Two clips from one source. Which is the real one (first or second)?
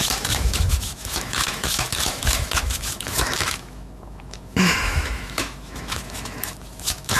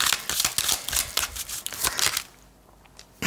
second